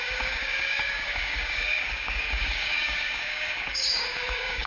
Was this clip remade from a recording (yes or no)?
yes